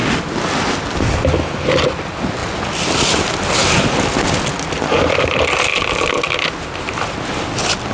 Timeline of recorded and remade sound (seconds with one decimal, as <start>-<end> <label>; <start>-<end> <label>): 0.0-7.9 recorded